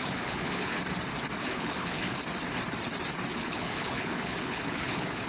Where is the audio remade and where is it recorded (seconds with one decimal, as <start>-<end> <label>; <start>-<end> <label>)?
0.0-0.8 remade; 0.8-1.4 recorded; 1.4-2.2 remade; 2.2-3.3 recorded; 3.3-5.3 remade